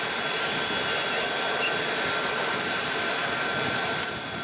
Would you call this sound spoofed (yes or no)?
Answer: no